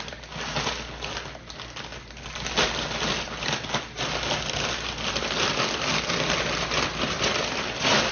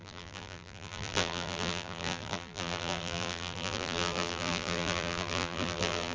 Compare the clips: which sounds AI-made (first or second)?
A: second